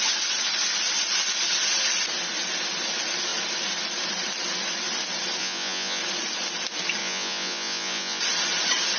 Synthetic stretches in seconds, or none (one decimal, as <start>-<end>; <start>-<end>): 5.4-6.0; 7.0-8.2